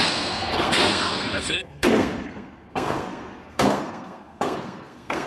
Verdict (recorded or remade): remade